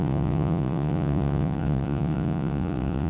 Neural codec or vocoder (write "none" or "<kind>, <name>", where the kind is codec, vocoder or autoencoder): vocoder, Vocos